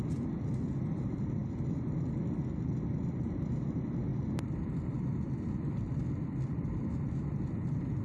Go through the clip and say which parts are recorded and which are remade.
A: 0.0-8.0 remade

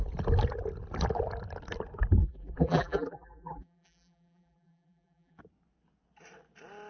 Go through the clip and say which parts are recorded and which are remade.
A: 0.0-2.2 recorded; 2.2-5.4 remade; 5.4-6.9 recorded

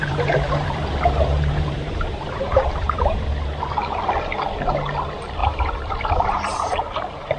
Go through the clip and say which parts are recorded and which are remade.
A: 0.0-3.3 remade; 3.3-5.4 recorded; 5.4-6.8 remade; 6.8-7.4 recorded

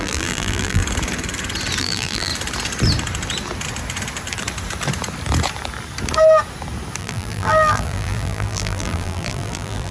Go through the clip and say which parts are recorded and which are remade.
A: 0.0-0.8 remade; 0.8-1.8 recorded; 1.8-2.3 remade; 2.3-7.0 recorded; 7.0-9.9 remade

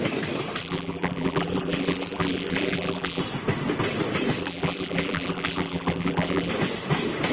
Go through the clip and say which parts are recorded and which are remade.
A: 0.0-0.6 recorded; 0.6-3.2 remade; 3.2-4.4 recorded; 4.4-6.5 remade; 6.5-7.3 recorded

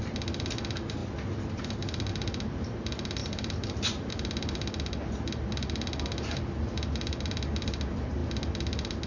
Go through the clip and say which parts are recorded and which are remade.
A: 0.0-9.1 recorded

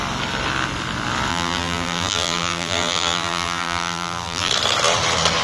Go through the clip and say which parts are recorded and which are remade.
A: 0.0-1.3 recorded; 1.3-4.5 remade; 4.5-5.4 recorded